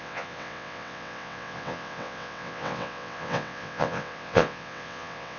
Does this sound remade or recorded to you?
remade